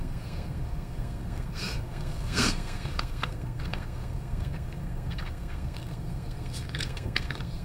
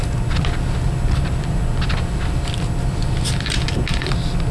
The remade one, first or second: first